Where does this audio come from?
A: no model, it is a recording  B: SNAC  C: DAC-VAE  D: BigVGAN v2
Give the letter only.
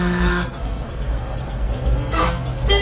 B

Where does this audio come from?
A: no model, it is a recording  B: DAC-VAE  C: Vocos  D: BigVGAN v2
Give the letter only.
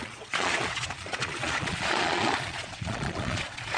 C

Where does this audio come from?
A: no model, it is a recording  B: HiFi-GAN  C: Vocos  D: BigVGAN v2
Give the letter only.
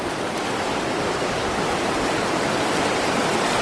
A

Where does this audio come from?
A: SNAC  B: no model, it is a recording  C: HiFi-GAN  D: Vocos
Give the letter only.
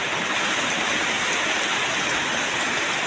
B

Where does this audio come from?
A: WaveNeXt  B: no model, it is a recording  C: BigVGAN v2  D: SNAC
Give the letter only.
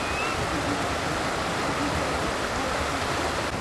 B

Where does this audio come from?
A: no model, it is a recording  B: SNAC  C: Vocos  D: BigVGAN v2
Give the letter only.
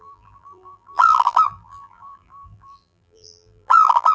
D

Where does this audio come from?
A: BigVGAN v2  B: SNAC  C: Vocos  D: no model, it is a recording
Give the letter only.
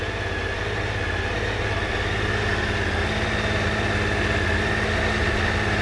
D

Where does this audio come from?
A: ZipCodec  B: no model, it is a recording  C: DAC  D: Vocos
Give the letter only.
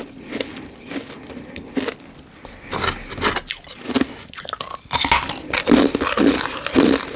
B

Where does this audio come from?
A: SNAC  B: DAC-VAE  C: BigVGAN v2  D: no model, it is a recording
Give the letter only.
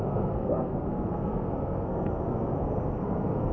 A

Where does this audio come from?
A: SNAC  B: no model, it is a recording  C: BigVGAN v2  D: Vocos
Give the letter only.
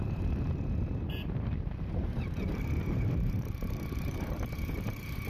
C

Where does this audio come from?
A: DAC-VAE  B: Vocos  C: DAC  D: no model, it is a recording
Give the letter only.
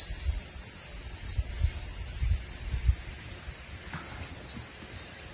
D